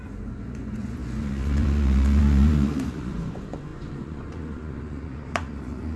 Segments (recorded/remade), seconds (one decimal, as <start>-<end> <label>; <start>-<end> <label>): 0.0-6.0 remade